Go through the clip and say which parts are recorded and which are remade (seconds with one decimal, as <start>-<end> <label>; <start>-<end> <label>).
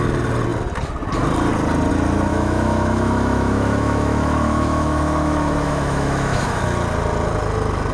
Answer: 0.0-2.3 recorded; 2.3-6.6 remade; 6.6-7.9 recorded